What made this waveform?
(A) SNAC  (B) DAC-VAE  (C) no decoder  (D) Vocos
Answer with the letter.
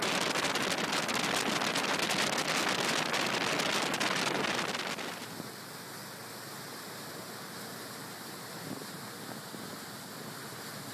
C